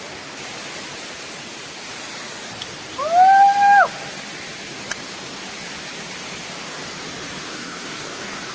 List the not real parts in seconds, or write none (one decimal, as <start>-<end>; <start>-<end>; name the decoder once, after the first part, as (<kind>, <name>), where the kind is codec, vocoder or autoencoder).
7.5-8.5 (codec, DAC)